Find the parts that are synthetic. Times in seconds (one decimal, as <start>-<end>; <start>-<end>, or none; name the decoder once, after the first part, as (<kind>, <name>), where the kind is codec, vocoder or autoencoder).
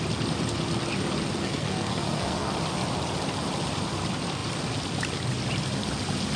1.4-2.5 (codec, SNAC)